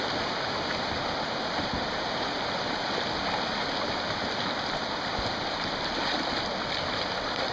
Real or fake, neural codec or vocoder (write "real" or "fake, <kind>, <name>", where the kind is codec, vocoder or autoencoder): real